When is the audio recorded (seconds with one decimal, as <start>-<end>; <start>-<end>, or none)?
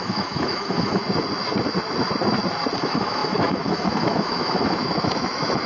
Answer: 1.0-2.8